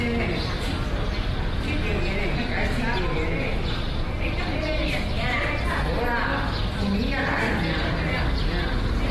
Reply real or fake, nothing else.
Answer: real